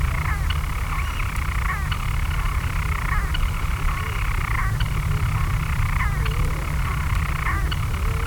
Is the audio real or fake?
real